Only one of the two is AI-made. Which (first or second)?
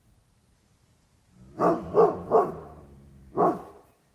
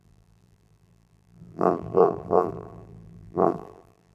second